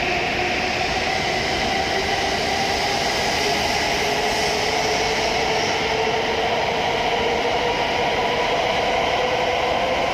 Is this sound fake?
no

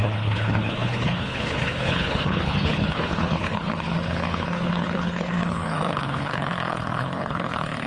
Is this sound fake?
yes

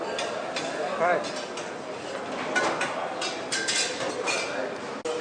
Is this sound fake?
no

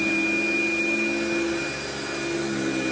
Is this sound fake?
no